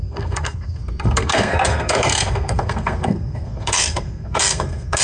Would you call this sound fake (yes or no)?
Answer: yes